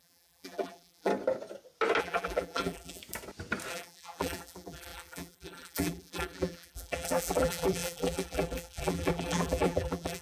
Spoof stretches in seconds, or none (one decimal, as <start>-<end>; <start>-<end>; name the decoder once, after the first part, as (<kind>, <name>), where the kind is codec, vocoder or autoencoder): 0.0-1.1 (vocoder, BigVGAN v2); 2.0-3.0; 3.7-10.2